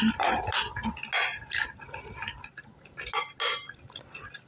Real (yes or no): yes